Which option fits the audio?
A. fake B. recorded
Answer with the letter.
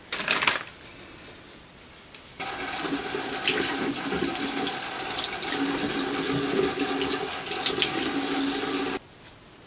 B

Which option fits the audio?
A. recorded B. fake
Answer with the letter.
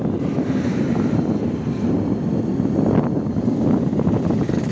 A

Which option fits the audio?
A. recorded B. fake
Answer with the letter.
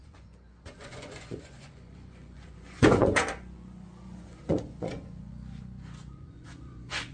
B